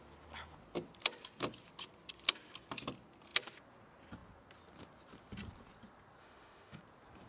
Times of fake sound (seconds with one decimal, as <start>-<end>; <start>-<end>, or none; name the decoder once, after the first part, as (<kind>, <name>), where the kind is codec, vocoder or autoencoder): 6.2-6.8 (autoencoder, DAC-VAE)